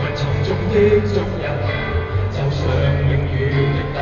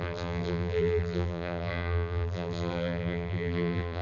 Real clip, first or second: first